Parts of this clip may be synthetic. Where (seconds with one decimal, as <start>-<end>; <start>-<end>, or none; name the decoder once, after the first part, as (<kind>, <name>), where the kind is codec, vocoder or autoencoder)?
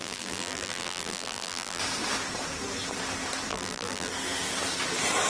0.0-1.8 (vocoder, BigVGAN v2); 3.5-4.1